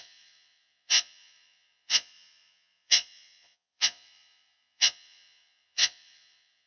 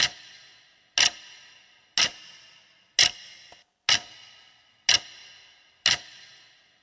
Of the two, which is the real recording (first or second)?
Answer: second